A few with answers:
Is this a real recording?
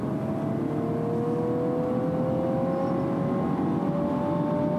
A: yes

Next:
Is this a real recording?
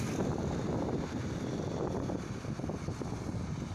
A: yes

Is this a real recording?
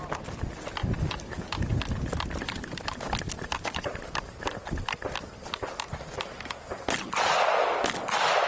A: yes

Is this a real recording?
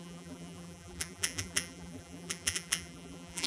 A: no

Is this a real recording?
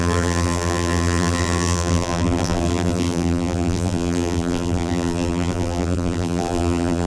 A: no